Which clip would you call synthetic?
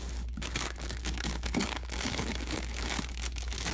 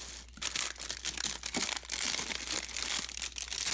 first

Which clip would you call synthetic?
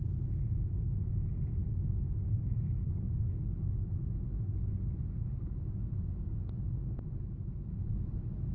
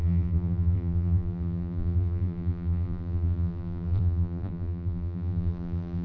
second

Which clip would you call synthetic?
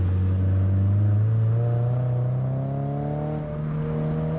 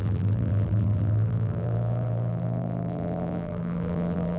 second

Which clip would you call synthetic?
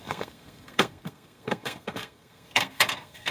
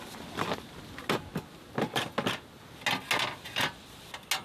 first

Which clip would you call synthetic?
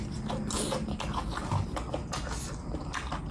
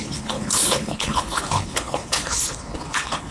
second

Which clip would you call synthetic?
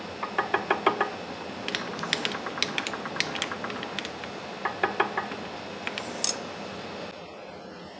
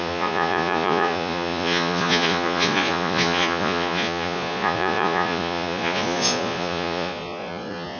second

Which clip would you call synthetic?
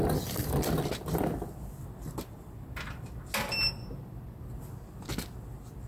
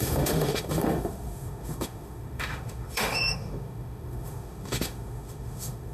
second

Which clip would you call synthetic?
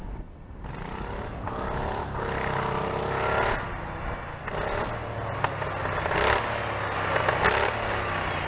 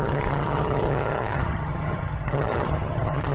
second